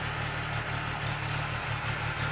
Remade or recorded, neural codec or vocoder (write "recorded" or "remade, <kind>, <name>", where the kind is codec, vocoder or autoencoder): recorded